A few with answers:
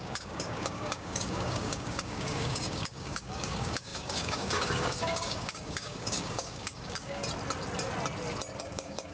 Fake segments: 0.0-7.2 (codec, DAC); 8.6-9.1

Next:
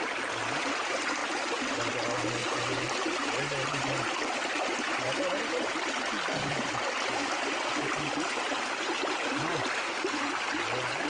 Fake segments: none

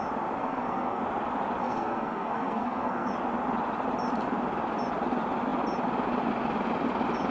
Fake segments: 0.4-1.0 (codec, SNAC); 1.6-3.1